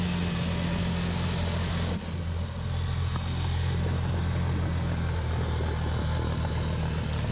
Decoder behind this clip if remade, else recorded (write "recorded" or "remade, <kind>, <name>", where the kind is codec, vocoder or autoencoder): recorded